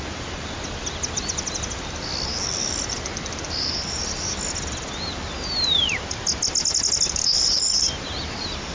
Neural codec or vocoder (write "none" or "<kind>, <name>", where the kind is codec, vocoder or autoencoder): none